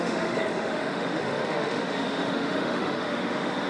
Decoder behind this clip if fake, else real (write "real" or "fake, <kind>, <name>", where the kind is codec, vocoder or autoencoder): fake, autoencoder, DAC-VAE